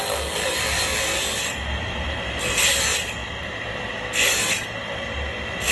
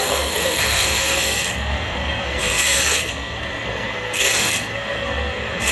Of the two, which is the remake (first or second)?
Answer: second